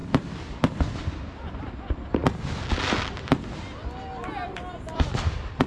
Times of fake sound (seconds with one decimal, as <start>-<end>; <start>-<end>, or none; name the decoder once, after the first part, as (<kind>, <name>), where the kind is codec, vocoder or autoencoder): none